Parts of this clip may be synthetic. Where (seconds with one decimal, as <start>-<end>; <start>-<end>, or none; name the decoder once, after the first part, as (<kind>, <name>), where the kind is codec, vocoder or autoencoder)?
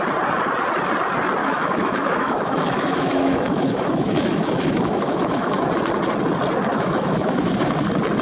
1.4-5.7 (autoencoder, DAC-VAE); 6.7-7.5